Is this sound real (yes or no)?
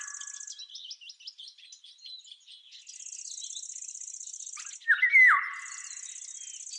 yes